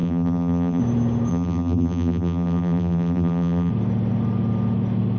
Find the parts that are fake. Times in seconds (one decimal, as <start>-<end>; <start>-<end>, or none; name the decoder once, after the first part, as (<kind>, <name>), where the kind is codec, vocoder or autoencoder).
0.0-0.8 (vocoder, BigVGAN v2); 1.3-3.7